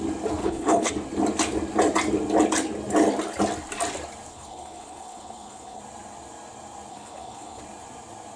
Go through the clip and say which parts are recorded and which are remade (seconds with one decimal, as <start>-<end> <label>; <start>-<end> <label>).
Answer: 0.0-0.4 recorded; 0.4-0.9 remade; 0.9-4.3 recorded; 4.3-5.8 remade; 5.8-6.9 recorded; 6.9-7.6 remade; 7.6-8.4 recorded